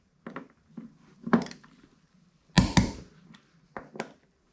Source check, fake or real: real